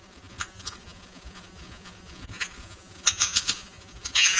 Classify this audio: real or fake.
fake